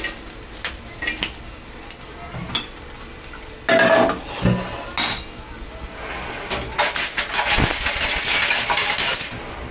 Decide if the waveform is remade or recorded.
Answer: recorded